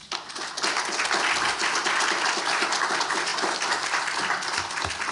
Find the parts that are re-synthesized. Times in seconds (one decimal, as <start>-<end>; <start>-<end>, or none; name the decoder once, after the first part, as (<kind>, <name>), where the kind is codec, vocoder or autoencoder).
none